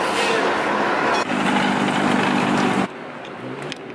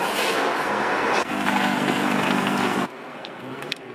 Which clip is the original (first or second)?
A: first